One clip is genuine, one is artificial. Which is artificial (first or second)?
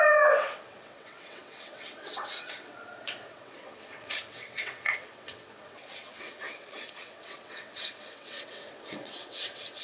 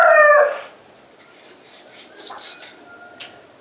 first